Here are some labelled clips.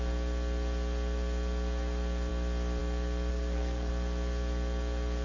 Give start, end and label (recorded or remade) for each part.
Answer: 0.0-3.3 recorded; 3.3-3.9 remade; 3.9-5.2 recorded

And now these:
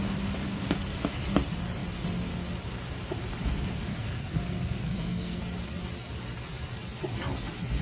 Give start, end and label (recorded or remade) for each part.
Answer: 0.0-3.9 recorded; 3.9-5.4 remade; 5.4-7.8 recorded

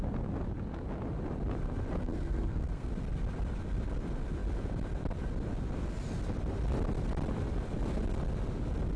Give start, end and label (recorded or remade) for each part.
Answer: 0.0-2.0 recorded; 2.0-2.9 remade; 2.9-9.0 recorded

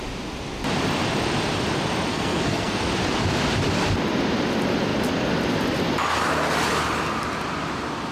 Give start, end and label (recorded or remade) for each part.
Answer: 0.0-2.1 recorded; 2.1-2.8 remade; 2.8-8.1 recorded

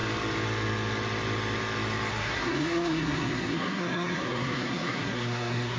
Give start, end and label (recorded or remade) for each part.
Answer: 0.0-2.1 recorded; 2.1-5.8 remade

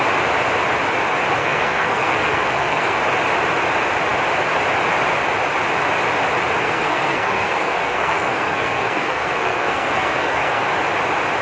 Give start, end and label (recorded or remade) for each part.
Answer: 0.0-1.4 recorded; 1.4-3.0 remade; 3.0-6.6 recorded; 6.6-10.7 remade; 10.7-11.4 recorded